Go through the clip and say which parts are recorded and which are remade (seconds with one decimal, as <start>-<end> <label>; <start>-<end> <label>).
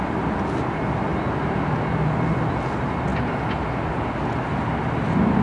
0.0-5.4 recorded